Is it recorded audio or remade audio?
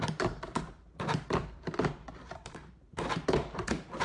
remade